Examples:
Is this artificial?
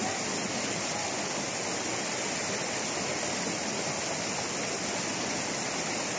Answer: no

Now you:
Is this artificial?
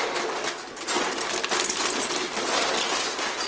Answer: no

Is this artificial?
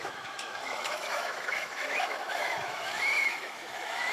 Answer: yes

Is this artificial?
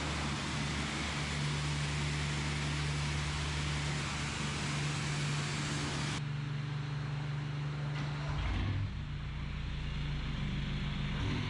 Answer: no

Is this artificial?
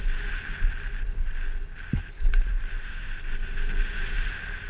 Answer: no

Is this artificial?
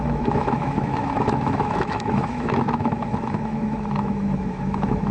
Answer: yes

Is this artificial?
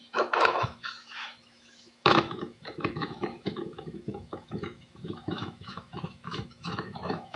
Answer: yes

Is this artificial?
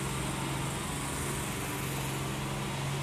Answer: no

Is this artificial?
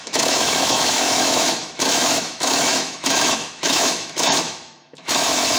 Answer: yes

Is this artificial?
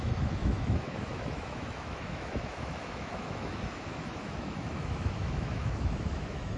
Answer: yes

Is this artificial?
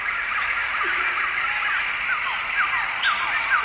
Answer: no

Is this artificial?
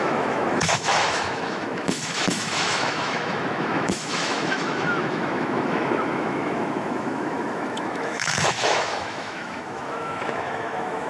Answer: yes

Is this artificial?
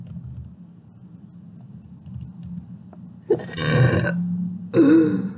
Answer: no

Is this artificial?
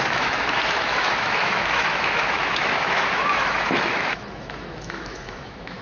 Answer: yes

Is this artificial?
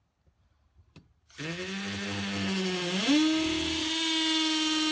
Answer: no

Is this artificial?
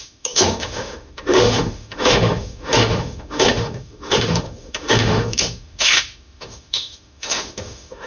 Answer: yes